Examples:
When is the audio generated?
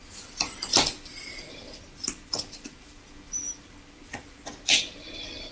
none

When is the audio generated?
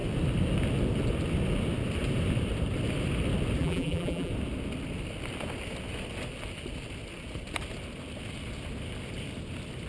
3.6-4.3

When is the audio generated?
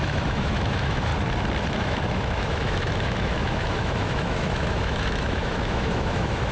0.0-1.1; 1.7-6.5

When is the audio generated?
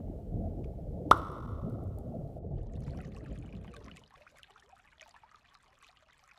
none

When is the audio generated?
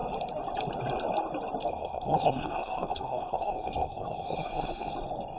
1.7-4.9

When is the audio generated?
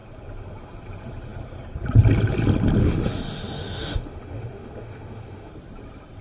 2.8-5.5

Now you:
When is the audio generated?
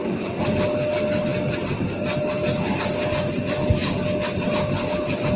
none